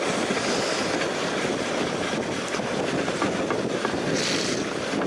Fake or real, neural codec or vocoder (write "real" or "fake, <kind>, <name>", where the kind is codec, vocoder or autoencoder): real